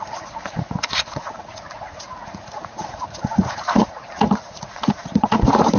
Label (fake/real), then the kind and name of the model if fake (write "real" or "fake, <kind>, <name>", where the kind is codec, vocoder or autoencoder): fake, vocoder, Vocos